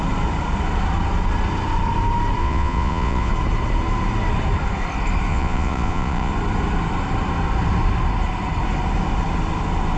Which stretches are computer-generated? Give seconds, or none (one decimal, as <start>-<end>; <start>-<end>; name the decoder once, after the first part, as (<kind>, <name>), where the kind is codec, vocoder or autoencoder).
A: 2.4-3.3 (vocoder, Vocos); 5.3-6.3